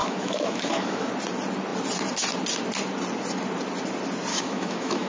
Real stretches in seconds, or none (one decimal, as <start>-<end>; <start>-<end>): 1.1-4.3